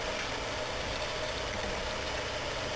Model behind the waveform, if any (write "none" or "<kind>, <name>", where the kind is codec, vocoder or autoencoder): none